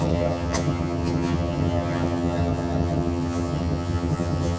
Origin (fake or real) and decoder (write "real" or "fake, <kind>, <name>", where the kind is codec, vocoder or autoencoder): fake, vocoder, HiFi-GAN